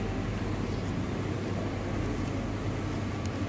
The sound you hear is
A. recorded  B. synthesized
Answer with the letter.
A